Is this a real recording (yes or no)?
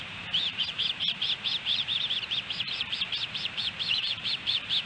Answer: no